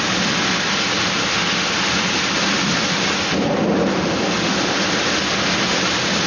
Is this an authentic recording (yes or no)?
yes